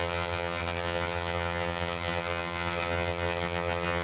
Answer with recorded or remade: remade